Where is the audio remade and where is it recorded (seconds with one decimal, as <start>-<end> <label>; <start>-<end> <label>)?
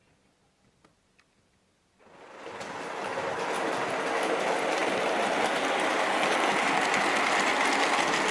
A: 0.0-4.8 recorded; 4.8-7.5 remade; 7.5-8.3 recorded